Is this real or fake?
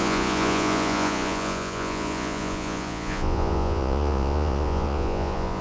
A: fake